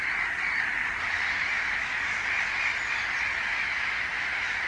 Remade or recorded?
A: recorded